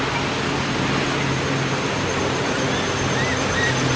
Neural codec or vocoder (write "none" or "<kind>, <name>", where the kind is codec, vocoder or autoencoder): none